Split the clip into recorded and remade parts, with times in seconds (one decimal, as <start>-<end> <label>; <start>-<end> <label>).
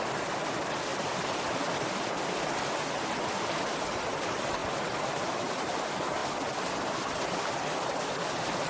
0.0-8.7 recorded